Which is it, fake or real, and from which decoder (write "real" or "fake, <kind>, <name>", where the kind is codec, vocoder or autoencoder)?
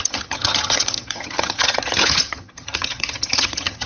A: fake, vocoder, HiFi-GAN